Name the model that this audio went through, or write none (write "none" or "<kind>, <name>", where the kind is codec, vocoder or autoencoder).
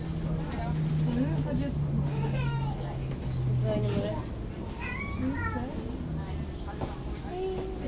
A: none